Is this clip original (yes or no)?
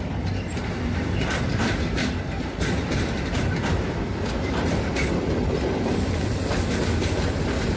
yes